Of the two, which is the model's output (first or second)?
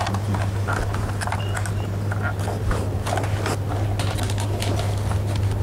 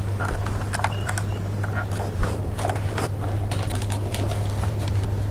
second